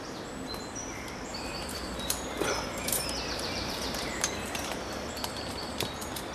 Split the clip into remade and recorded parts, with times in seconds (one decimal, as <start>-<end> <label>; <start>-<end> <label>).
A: 0.0-1.3 recorded; 1.3-5.1 remade; 5.1-6.3 recorded